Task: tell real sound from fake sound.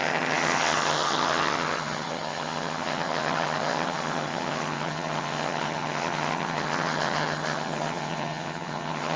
fake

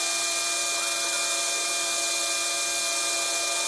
real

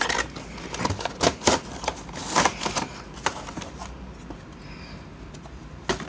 real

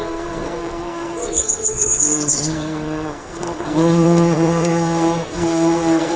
fake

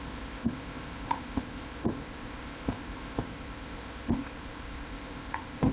fake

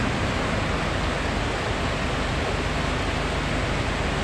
real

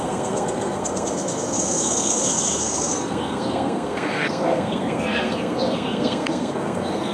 fake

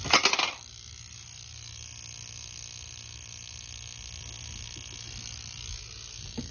real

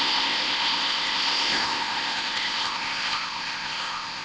fake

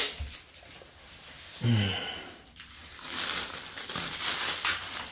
real